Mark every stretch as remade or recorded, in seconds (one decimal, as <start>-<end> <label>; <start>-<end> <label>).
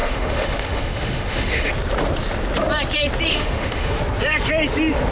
0.0-1.7 remade; 1.7-3.3 recorded; 3.3-4.0 remade; 4.0-5.1 recorded